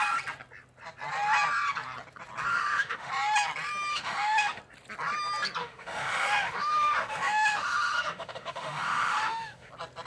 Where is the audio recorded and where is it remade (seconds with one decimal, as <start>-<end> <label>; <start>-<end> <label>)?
0.0-2.5 recorded; 2.5-3.1 remade; 3.1-3.9 recorded; 3.9-4.6 remade; 4.6-5.6 recorded; 5.6-9.7 remade; 9.7-10.1 recorded